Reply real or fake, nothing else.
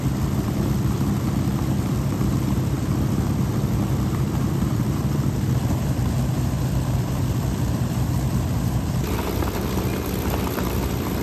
fake